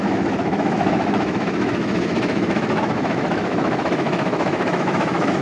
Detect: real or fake fake